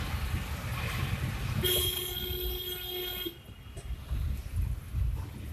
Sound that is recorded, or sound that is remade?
recorded